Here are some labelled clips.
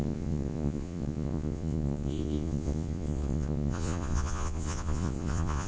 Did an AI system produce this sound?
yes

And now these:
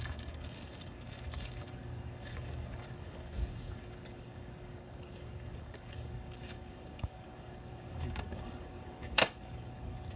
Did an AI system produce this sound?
yes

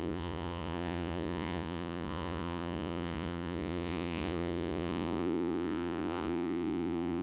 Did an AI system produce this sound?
yes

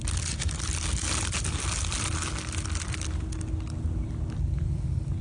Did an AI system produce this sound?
no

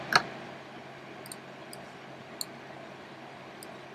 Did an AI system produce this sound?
no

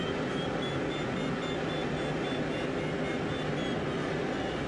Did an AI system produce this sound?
no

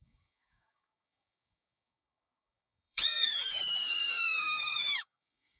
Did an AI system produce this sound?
yes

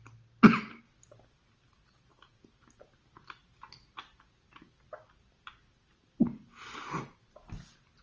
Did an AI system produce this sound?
no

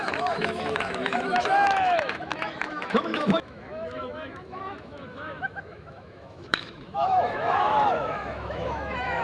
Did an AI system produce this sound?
yes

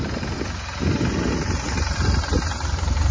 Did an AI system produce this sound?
no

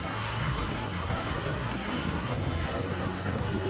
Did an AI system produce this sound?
yes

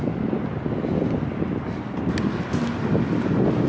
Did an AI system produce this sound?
no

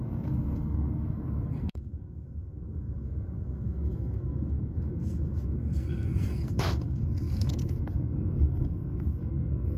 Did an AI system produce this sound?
yes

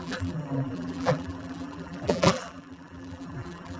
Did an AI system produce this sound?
yes